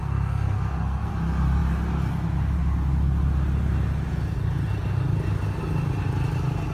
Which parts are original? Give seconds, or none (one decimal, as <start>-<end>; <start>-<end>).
1.1-6.7